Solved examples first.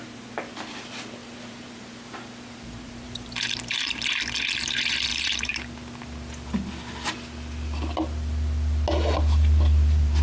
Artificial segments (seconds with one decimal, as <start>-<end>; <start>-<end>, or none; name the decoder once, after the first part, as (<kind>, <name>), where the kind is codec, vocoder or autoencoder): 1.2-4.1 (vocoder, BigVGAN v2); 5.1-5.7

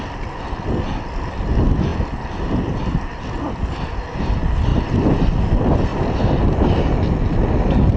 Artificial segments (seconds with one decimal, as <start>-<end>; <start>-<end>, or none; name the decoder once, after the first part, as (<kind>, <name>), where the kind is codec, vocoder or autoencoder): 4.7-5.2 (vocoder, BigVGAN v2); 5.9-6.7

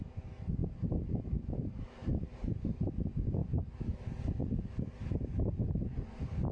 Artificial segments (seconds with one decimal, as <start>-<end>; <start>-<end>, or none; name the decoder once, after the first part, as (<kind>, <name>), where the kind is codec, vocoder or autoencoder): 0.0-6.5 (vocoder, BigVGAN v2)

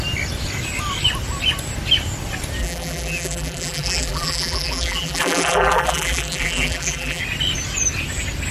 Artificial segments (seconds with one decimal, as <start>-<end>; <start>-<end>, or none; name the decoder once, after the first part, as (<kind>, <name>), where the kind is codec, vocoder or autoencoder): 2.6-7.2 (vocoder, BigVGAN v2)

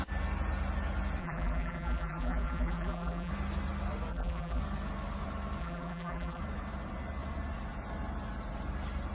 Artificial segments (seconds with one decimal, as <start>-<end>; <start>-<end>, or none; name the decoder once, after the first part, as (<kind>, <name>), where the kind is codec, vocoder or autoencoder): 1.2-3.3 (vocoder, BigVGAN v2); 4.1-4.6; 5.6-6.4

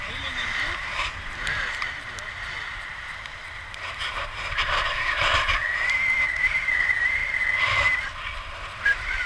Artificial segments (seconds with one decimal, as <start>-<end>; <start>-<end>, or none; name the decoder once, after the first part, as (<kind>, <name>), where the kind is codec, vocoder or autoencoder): 0.0-5.6 (vocoder, BigVGAN v2); 6.4-7.2; 8.4-9.3

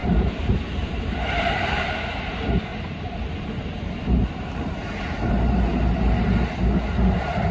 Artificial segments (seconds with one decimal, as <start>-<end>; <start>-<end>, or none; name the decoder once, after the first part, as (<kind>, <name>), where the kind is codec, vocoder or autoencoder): 0.0-1.9 (vocoder, BigVGAN v2); 2.7-3.3